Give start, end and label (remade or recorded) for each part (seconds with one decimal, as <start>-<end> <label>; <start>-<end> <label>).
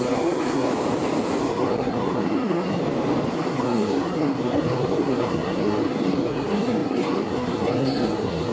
0.0-0.7 remade; 0.7-1.4 recorded; 1.4-2.8 remade; 2.8-3.3 recorded; 3.3-8.5 remade